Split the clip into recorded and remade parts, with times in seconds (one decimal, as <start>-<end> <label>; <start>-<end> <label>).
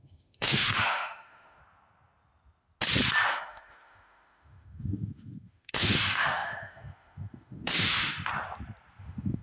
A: 0.0-1.6 remade; 1.6-3.3 recorded; 3.3-8.3 remade; 8.3-9.0 recorded; 9.0-9.4 remade